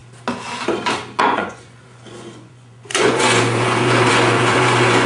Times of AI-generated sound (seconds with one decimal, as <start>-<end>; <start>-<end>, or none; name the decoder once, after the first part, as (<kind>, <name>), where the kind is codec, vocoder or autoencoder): 1.2-5.1 (vocoder, Vocos)